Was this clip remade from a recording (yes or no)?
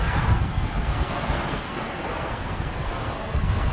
yes